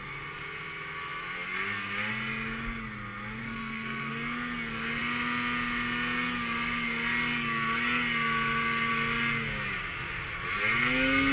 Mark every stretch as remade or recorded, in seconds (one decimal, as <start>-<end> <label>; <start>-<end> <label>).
0.0-3.4 recorded; 3.4-4.1 remade; 4.1-11.3 recorded